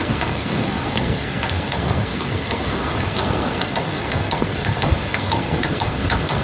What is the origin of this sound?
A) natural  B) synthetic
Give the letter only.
B